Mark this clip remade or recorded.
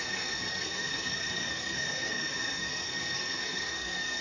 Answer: remade